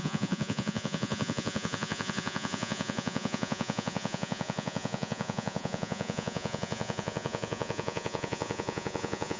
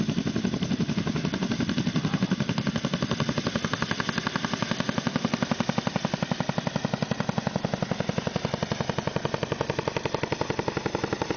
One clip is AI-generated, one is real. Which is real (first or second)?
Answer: second